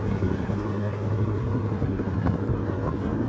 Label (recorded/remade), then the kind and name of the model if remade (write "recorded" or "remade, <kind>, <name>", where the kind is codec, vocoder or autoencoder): remade, codec, SNAC